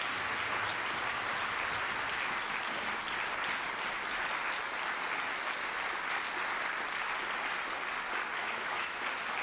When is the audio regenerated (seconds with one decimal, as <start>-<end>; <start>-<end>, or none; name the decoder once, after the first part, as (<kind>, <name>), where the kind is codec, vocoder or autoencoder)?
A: 8.4-9.0 (autoencoder, DAC-VAE)

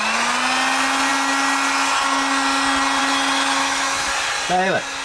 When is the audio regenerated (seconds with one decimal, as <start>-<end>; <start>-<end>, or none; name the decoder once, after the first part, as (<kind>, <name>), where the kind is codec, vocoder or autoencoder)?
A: 3.6-4.1 (autoencoder, DAC-VAE)

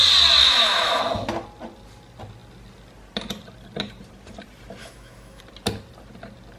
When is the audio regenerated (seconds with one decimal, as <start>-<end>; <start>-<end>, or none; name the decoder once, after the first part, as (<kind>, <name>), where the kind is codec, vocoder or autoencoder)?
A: 0.4-1.0 (autoencoder, DAC-VAE); 4.8-5.4

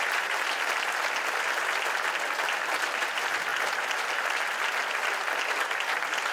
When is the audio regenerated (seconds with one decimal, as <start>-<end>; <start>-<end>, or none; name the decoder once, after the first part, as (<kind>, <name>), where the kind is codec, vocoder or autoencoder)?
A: none